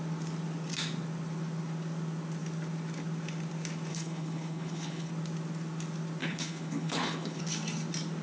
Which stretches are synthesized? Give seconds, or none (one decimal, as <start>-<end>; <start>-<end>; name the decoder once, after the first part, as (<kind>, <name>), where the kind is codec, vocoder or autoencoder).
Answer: 3.9-5.1 (codec, HILCodec); 6.2-7.4